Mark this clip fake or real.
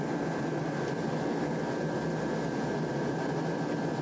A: real